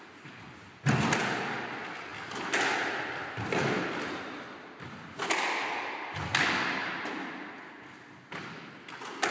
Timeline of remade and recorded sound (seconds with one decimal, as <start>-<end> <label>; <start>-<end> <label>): 0.0-9.3 recorded